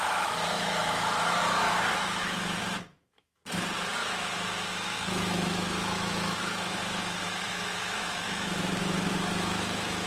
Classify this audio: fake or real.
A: fake